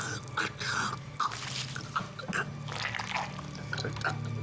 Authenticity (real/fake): real